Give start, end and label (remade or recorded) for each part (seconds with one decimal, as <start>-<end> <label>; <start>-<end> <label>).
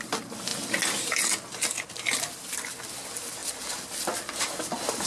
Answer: 0.0-5.1 recorded